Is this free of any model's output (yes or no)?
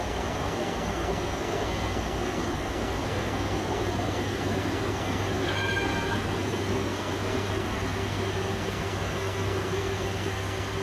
no